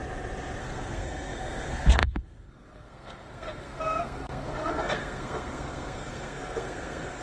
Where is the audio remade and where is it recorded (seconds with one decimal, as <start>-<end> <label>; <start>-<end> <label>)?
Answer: 0.0-0.6 recorded; 0.6-7.2 remade